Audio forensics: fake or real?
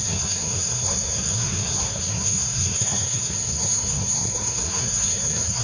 fake